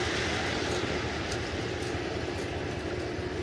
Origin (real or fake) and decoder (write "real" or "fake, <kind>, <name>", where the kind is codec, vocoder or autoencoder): real